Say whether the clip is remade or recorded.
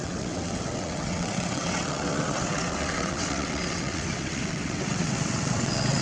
remade